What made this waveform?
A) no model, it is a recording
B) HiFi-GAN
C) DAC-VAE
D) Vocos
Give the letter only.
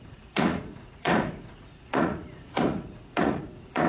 D